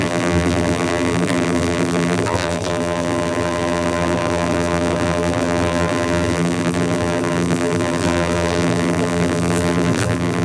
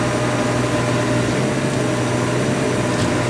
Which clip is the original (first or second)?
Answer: second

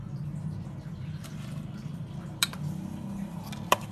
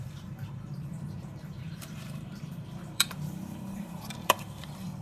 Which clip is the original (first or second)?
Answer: first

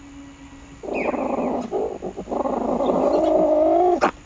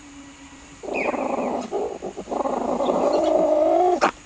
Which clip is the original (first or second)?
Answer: first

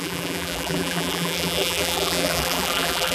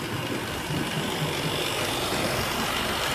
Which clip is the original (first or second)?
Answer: second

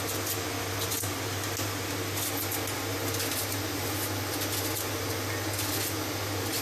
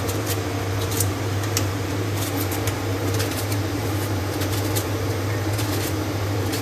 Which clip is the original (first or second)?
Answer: first